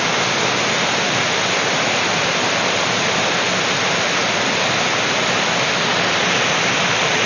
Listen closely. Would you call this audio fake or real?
real